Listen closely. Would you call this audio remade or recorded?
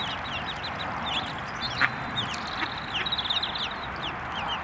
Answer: recorded